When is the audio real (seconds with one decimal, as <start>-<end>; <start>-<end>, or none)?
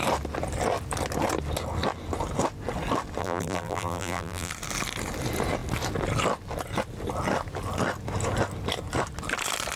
0.0-3.2; 4.5-9.8